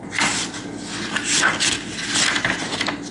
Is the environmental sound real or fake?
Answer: real